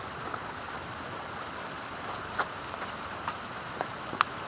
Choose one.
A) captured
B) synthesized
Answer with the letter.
B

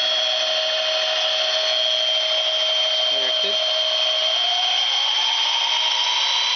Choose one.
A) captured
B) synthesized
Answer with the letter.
A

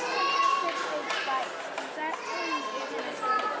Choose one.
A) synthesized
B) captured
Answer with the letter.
B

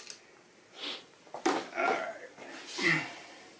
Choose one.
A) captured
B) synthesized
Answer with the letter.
A